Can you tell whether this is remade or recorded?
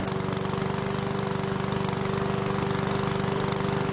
recorded